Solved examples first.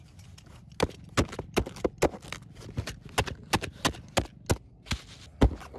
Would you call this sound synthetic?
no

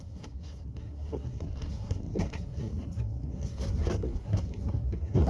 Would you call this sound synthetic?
yes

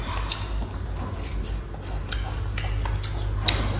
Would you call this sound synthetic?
no